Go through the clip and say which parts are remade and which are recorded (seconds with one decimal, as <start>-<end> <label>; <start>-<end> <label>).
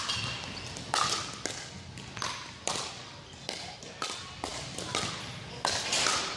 0.0-6.4 recorded